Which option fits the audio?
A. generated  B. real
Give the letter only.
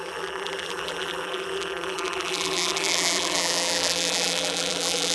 A